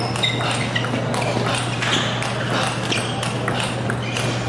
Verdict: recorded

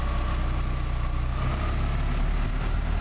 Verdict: recorded